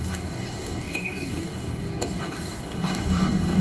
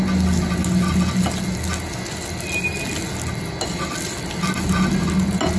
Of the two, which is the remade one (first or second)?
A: first